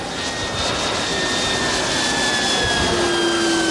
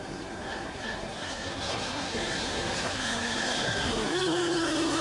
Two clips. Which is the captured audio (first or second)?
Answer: first